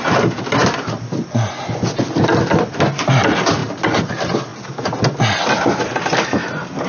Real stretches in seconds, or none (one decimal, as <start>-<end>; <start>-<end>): 0.0-6.9